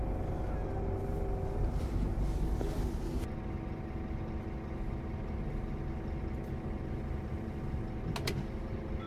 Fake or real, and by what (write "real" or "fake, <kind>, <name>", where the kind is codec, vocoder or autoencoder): real